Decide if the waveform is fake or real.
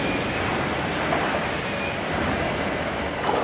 real